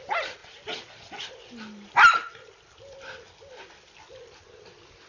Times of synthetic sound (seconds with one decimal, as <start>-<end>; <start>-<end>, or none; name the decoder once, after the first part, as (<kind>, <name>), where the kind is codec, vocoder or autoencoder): none